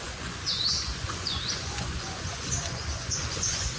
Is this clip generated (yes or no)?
yes